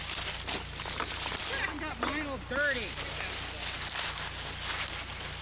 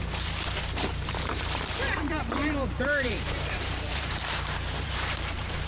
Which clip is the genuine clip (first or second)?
first